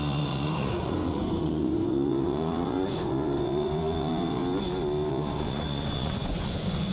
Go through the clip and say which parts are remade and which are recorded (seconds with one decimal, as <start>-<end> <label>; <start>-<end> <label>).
0.0-4.4 remade; 4.4-5.1 recorded; 5.1-6.9 remade